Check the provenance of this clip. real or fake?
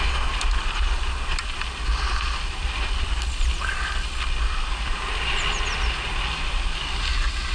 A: real